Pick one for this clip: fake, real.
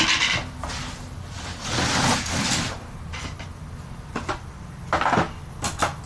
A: real